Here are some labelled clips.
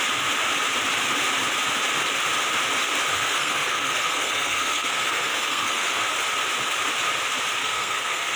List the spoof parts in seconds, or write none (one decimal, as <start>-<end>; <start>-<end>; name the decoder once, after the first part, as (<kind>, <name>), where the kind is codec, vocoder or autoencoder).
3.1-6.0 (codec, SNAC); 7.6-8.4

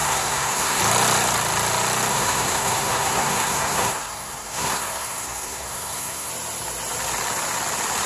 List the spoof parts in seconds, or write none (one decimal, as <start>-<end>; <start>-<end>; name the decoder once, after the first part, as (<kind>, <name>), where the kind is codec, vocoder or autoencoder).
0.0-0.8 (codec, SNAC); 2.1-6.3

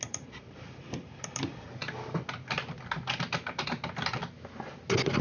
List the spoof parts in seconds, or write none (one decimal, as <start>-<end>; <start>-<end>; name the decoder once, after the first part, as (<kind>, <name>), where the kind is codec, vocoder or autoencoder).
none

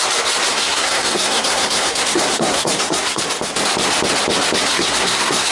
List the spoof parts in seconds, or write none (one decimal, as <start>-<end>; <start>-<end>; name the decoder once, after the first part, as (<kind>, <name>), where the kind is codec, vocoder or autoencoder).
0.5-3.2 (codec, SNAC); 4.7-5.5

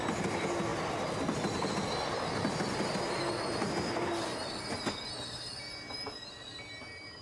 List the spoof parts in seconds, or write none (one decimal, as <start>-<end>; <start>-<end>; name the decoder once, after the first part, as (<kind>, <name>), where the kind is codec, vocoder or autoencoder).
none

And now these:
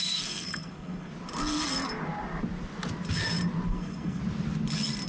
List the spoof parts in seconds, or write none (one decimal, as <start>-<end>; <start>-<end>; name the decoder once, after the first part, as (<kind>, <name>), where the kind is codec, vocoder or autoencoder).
0.0-1.1 (codec, SNAC); 3.7-4.2